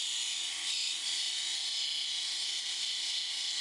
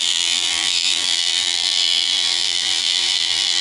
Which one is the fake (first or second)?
second